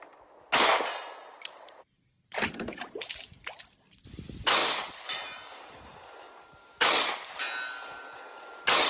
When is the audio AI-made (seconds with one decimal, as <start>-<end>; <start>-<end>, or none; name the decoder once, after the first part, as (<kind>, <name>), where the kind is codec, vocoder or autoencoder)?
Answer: 0.7-2.8 (vocoder, BigVGAN v2); 4.6-6.0